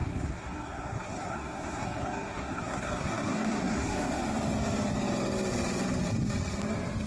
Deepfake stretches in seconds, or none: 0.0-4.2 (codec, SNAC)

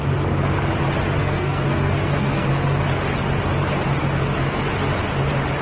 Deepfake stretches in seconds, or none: 1.2-2.8 (codec, SNAC); 4.0-4.6

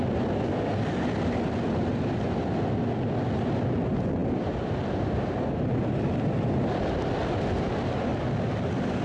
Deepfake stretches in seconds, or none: none